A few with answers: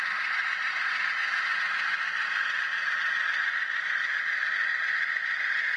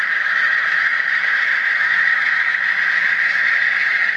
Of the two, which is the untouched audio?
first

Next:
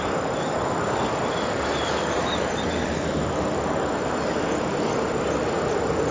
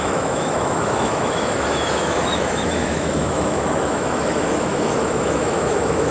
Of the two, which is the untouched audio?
first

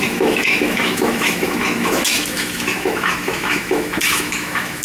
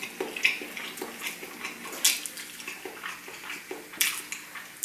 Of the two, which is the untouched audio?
second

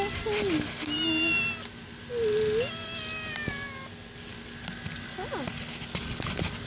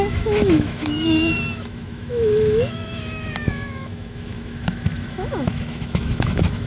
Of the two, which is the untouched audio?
first